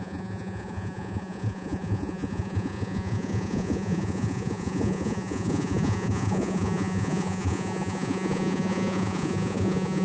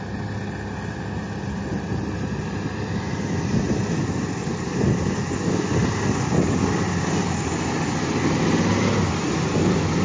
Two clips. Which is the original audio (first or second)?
second